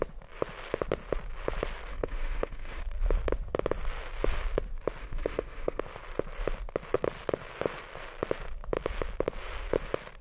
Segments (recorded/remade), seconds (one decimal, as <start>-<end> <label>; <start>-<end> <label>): 0.0-1.9 recorded; 1.9-2.8 remade; 2.8-5.0 recorded; 5.0-5.8 remade; 5.8-10.2 recorded